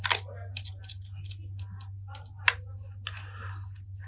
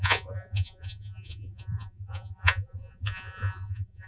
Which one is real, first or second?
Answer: first